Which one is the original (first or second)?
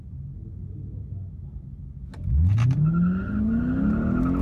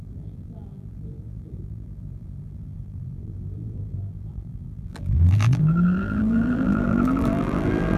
first